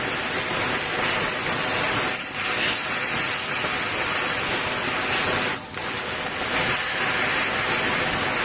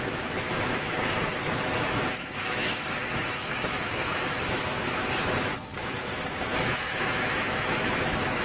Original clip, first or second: first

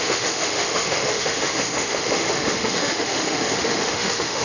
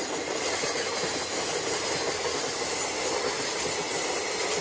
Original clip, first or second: second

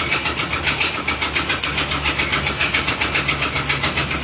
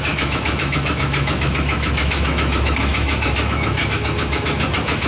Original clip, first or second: first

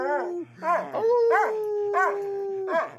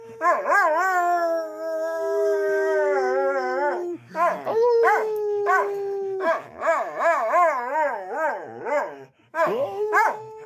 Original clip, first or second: first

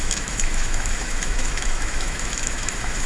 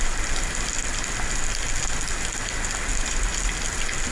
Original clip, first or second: second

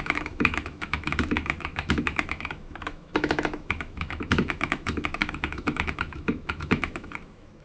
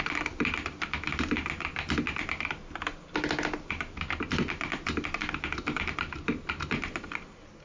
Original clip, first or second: second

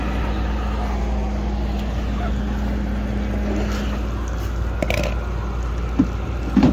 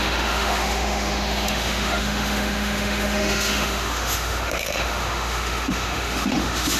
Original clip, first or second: first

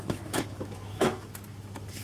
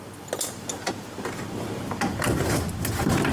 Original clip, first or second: second